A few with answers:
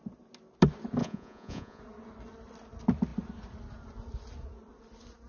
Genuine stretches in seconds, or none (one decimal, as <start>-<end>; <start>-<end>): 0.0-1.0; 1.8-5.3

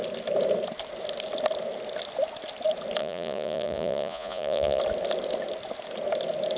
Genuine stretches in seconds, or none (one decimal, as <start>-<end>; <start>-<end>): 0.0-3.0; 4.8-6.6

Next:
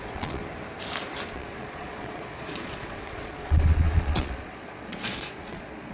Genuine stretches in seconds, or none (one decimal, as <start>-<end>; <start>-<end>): 0.4-1.3

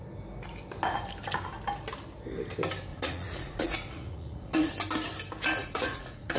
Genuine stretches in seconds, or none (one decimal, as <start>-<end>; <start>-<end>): 0.0-2.9; 4.7-5.6

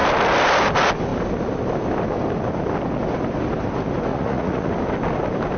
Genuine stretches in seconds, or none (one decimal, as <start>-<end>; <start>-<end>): 0.0-4.1; 4.7-5.6